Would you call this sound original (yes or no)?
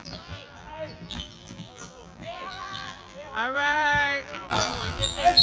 no